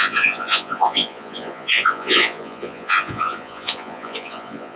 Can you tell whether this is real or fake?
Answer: fake